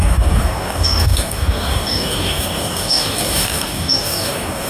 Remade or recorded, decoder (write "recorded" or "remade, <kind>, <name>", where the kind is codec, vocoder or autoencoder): remade, codec, DAC